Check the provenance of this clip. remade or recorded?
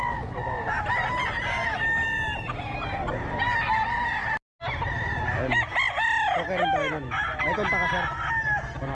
recorded